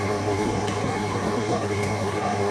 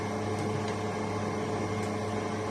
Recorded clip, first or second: second